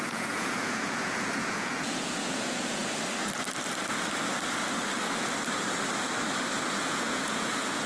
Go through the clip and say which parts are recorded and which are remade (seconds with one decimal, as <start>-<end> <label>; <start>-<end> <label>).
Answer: 0.0-2.8 remade; 2.8-6.8 recorded; 6.8-7.9 remade